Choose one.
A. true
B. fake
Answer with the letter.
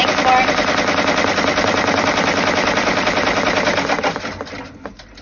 A